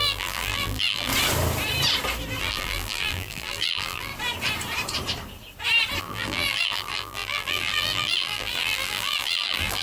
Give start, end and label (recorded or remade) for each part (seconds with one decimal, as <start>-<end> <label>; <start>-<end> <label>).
0.0-1.1 remade; 1.1-2.4 recorded; 2.4-4.1 remade; 4.1-6.0 recorded; 6.0-9.8 remade